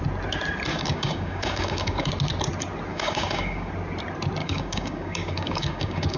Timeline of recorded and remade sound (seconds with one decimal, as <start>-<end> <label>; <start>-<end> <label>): 0.0-0.7 recorded; 0.7-2.1 remade; 2.1-2.9 recorded; 2.9-3.7 remade; 3.7-4.4 recorded; 4.4-6.2 remade